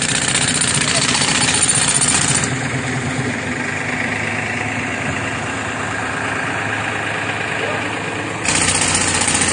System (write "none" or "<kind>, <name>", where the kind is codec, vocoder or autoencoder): none